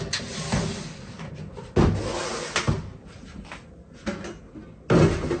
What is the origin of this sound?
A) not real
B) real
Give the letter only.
B